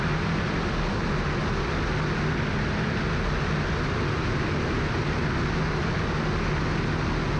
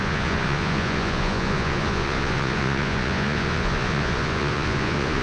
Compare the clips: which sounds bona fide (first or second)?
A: first